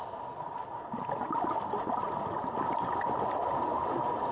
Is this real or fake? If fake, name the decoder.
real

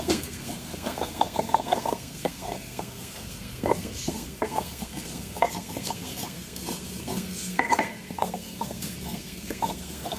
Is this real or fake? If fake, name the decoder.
fake, codec, SNAC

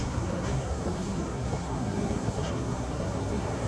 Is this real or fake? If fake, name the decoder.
fake, codec, SNAC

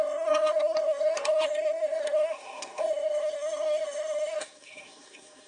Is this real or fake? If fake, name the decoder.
fake, codec, SNAC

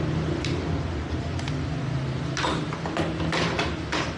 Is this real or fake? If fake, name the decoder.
real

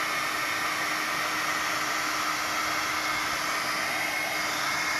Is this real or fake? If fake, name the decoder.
real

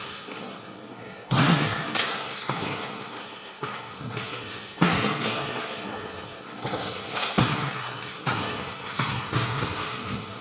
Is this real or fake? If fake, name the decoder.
fake, codec, SNAC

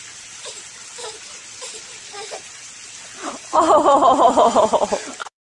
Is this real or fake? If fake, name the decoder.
real